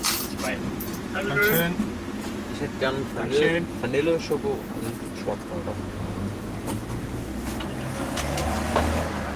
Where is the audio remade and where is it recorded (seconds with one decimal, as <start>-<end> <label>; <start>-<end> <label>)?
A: 0.0-1.4 remade; 1.4-5.9 recorded; 5.9-7.3 remade; 7.3-9.4 recorded